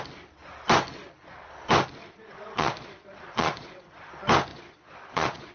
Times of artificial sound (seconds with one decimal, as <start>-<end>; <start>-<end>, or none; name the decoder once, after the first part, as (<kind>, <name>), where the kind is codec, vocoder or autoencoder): 2.0-4.1 (vocoder, Vocos); 4.5-5.5